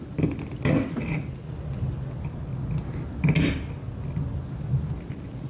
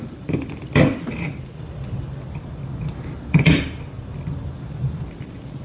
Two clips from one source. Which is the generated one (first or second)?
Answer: second